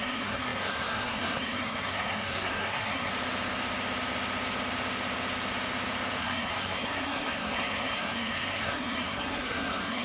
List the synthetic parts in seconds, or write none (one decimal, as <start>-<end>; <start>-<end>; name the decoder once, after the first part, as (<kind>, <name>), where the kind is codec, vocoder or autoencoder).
0.0-3.1 (codec, SNAC); 6.2-10.0